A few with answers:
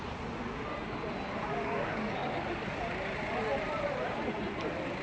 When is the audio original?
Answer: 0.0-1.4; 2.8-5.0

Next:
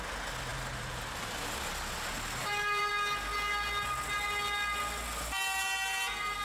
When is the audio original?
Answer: 0.0-0.5; 1.7-2.4; 2.9-6.4

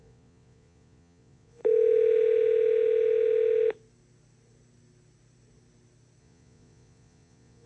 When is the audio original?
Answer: 1.6-6.2

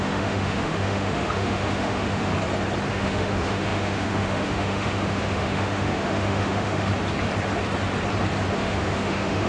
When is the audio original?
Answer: 2.3-2.9; 6.9-8.5

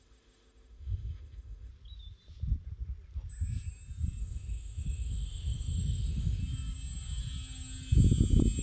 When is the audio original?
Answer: 1.7-4.2; 6.4-8.6

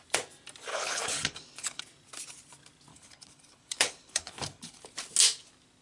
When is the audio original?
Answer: 0.0-0.7; 1.8-2.9; 4.8-5.8

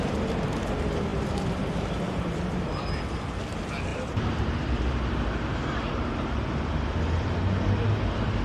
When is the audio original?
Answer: 0.0-1.1; 3.4-3.9; 6.3-8.4

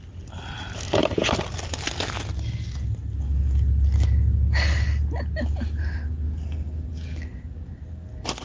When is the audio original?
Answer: 0.0-8.4